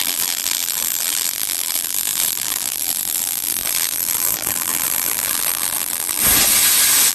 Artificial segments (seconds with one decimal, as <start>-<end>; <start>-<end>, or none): 0.0-6.2